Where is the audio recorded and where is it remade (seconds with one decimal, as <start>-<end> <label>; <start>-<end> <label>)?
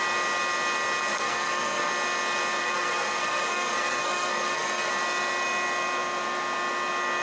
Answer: 0.0-1.1 recorded; 1.1-1.9 remade; 1.9-2.6 recorded; 2.6-4.9 remade; 4.9-7.2 recorded